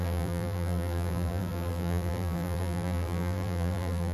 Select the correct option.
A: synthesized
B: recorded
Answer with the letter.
A